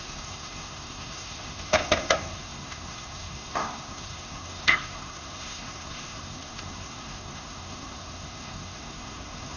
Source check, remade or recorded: remade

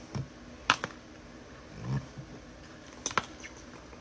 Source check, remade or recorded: recorded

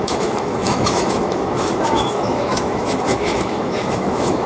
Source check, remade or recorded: remade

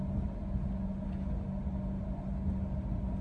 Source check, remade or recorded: recorded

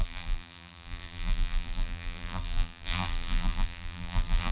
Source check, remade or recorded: remade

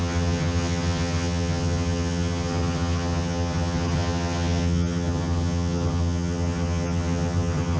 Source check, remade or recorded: remade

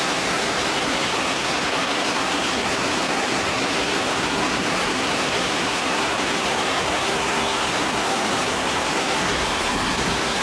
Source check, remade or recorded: remade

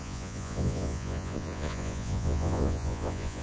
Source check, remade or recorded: remade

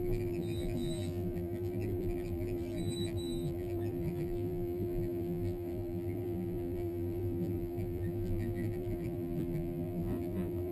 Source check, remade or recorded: remade